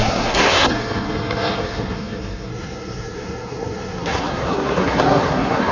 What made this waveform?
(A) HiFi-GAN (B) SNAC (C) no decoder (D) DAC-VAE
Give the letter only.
B